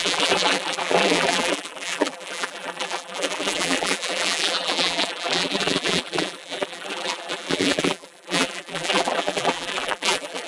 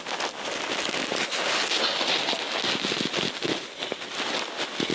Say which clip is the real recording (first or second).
second